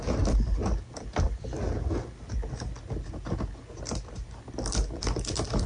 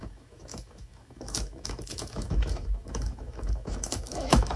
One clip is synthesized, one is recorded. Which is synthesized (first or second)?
second